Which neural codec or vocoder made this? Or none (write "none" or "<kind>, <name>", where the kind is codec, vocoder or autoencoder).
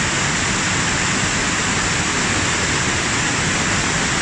none